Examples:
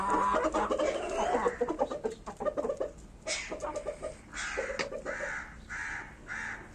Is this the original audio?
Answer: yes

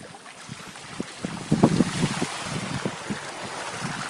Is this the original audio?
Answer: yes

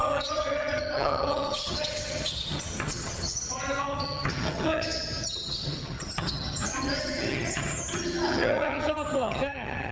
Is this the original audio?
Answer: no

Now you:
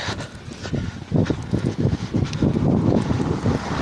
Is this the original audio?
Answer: yes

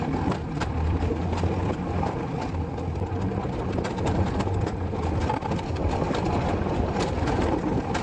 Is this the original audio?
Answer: no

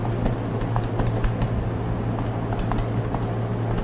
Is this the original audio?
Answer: yes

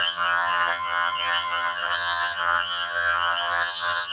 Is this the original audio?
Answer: no